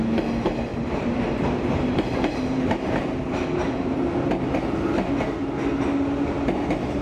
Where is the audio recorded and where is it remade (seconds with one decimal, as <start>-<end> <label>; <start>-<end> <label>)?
0.0-0.7 recorded; 0.7-3.0 remade; 3.0-3.6 recorded; 3.6-5.2 remade; 5.2-7.0 recorded